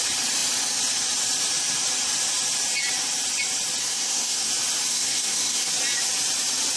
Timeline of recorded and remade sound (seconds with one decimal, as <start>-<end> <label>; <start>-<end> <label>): 0.0-3.8 recorded; 3.8-4.5 remade; 4.5-4.9 recorded; 4.9-5.7 remade; 5.7-6.8 recorded

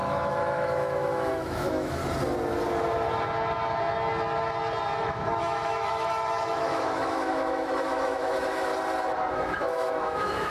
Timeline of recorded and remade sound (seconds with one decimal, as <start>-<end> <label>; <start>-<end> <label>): 0.0-2.0 remade; 2.0-5.0 recorded; 5.0-8.7 remade; 8.7-9.3 recorded; 9.3-10.5 remade

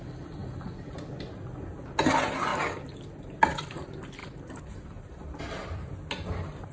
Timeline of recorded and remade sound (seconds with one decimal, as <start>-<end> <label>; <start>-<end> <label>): 0.0-2.5 recorded; 2.5-3.2 remade; 3.2-6.7 recorded

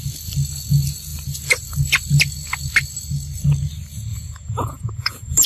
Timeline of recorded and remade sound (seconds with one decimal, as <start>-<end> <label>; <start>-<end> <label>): 0.0-4.1 recorded; 4.1-5.5 remade

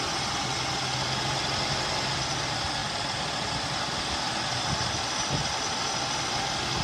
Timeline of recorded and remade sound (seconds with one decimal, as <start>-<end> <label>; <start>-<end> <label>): 0.0-6.8 recorded

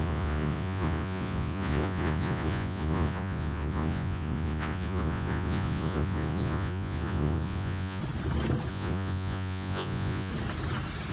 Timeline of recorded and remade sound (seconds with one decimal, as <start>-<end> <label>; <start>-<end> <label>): 0.0-8.0 remade; 8.0-8.7 recorded; 8.7-10.3 remade; 10.3-11.1 recorded